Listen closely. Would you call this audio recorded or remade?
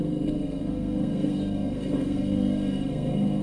remade